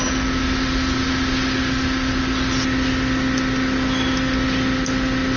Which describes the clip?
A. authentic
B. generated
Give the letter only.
A